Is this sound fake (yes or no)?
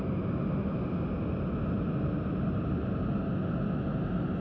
no